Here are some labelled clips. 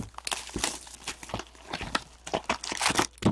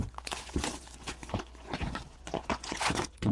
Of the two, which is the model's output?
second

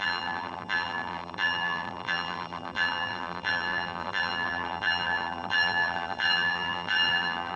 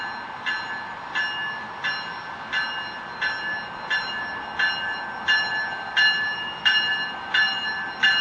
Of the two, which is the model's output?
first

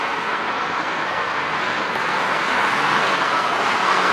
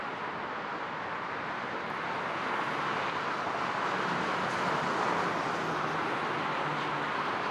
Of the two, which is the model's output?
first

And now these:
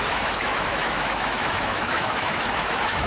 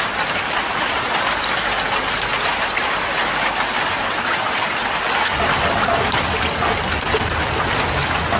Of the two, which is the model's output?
first